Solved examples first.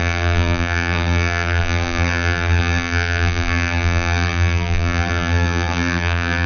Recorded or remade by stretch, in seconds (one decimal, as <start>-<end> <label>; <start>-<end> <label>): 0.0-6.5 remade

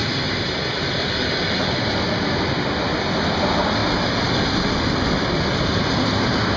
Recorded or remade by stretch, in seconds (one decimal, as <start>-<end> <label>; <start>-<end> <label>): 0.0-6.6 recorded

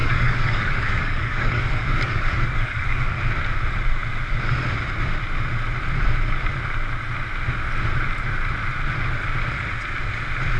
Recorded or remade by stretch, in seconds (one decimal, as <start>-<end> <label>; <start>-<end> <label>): 0.0-3.2 remade; 3.2-10.6 recorded

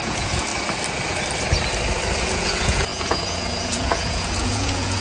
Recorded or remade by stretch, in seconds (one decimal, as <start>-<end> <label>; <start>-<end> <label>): 0.0-0.5 remade; 0.5-2.2 recorded; 2.2-5.0 remade

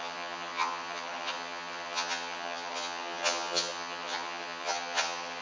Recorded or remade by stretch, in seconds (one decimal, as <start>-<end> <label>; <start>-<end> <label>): 0.0-5.4 remade